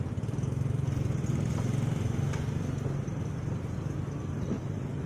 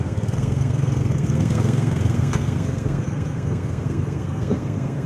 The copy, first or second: second